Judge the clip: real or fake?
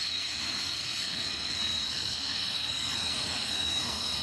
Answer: fake